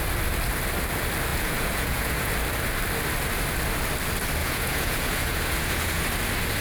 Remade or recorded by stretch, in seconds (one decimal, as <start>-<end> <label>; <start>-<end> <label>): 0.0-1.3 recorded; 1.3-2.3 remade; 2.3-4.4 recorded; 4.4-6.0 remade; 6.0-6.6 recorded